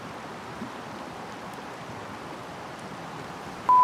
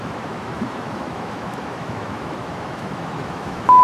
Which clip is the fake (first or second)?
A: second